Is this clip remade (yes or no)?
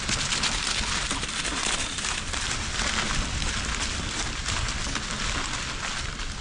no